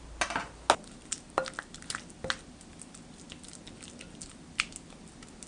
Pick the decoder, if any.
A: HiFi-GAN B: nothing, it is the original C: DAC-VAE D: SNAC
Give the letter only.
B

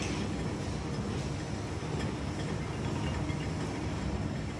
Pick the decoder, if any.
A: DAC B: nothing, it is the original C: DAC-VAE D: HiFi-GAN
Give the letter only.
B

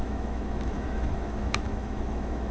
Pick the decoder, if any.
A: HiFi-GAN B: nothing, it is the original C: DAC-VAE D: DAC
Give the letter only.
C